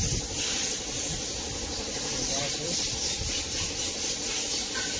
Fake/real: real